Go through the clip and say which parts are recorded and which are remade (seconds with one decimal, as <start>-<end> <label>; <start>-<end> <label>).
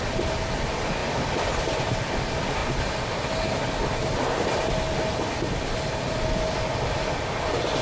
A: 0.0-2.6 remade; 2.6-6.1 recorded; 6.1-7.8 remade